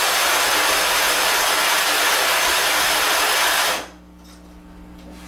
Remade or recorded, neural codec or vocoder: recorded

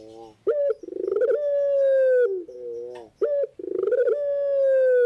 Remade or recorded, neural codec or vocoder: recorded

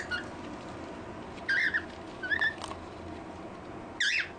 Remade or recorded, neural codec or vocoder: recorded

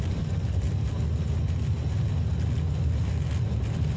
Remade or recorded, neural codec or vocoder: recorded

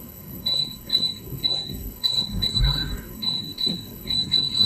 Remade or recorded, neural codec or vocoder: remade, codec, SNAC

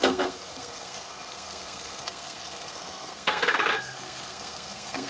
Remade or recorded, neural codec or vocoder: remade, codec, SNAC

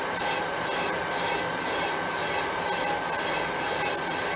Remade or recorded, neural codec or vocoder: recorded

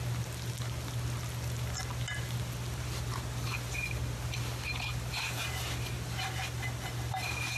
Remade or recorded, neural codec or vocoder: recorded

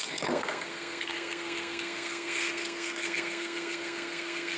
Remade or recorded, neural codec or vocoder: remade, codec, SNAC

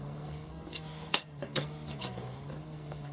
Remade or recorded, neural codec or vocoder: remade, codec, SNAC